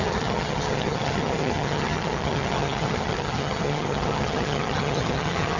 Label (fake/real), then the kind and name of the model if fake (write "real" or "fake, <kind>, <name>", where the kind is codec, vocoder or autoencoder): fake, vocoder, HiFi-GAN